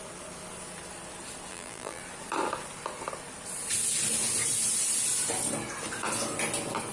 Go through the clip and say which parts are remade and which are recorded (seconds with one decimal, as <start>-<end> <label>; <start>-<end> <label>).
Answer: 0.0-1.5 recorded; 1.5-2.0 remade; 2.0-6.9 recorded